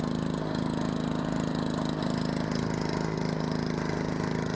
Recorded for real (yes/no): yes